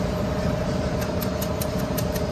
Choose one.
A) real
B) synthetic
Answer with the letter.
B